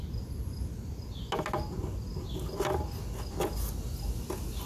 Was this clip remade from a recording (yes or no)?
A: no